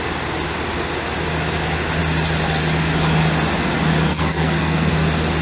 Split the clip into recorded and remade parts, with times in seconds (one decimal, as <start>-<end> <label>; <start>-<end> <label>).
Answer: 0.0-4.1 recorded; 4.1-4.9 remade; 4.9-5.4 recorded

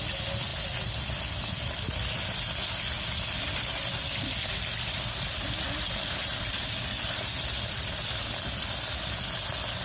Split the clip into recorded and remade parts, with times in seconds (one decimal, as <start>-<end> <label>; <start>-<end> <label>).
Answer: 0.0-9.8 recorded

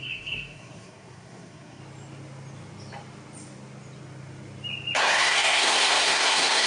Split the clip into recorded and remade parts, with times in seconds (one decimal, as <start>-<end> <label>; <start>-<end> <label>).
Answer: 0.0-1.8 remade; 1.8-5.0 recorded; 5.0-6.7 remade

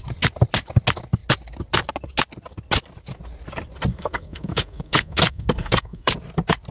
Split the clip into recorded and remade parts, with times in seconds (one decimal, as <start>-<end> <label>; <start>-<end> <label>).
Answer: 0.0-3.9 recorded; 3.9-6.1 remade; 6.1-6.7 recorded